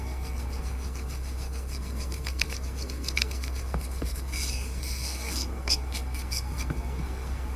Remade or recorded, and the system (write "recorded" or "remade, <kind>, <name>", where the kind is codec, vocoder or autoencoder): remade, codec, SNAC